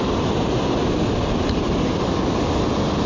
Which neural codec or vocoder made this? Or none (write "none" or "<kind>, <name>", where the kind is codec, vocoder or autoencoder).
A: none